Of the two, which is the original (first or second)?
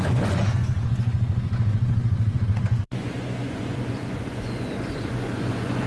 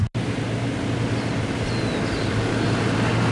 second